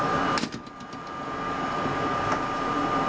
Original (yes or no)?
yes